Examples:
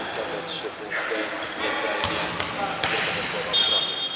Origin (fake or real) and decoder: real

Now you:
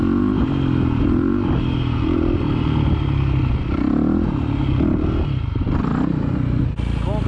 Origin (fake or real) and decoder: real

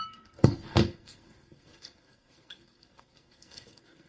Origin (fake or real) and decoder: fake, codec, SNAC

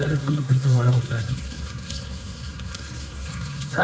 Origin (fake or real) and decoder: fake, codec, SNAC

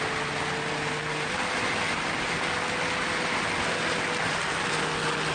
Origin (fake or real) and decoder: real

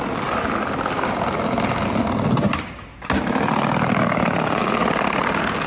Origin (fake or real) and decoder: real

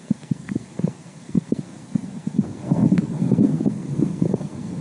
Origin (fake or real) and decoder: fake, codec, SNAC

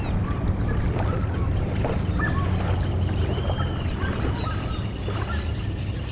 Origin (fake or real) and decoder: real